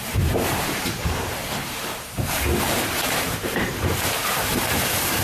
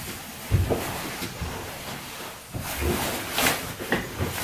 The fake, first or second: first